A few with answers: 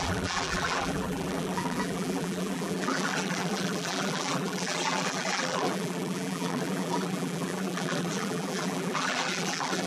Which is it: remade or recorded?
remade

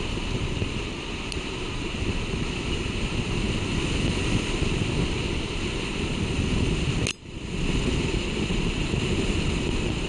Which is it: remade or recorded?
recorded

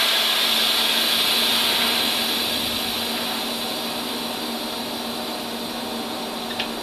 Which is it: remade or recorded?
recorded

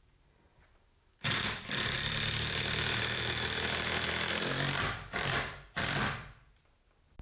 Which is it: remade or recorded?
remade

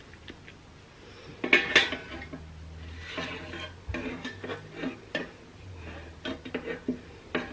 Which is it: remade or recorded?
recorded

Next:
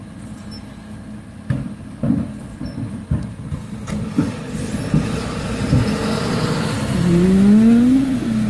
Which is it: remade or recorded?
recorded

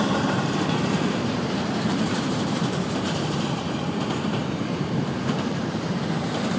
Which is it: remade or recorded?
remade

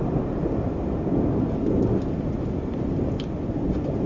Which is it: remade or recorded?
recorded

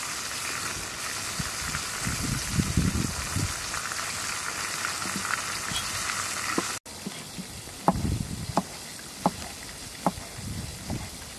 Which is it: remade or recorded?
recorded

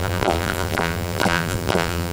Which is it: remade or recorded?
remade